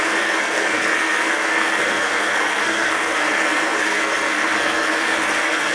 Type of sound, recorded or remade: remade